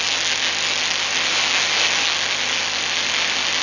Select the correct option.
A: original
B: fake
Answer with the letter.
A